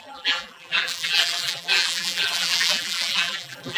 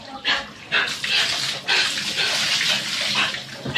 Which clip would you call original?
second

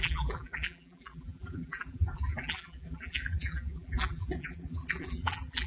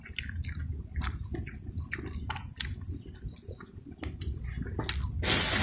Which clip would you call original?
second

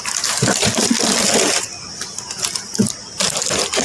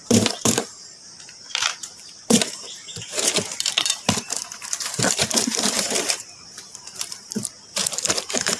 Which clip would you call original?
first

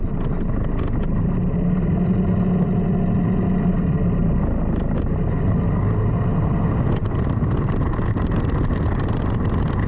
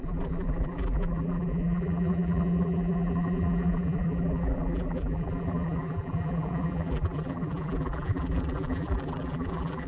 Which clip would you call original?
first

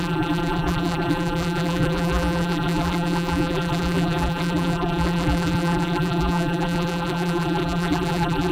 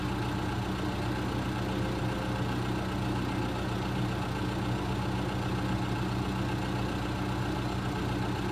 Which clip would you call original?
second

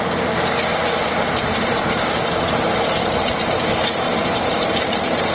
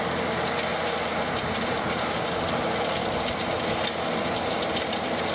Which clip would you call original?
second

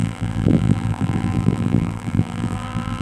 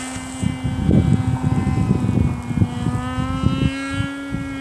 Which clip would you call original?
second